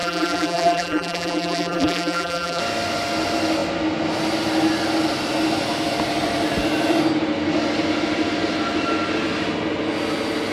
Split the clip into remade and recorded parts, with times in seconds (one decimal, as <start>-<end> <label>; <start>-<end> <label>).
0.0-2.6 remade; 2.6-10.5 recorded